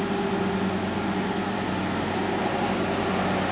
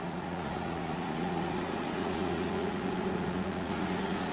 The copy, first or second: second